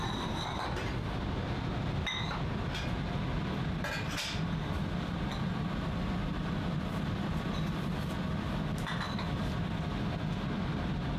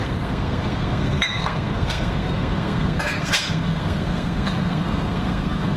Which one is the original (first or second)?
first